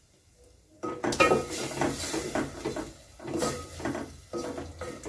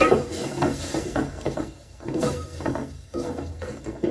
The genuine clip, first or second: first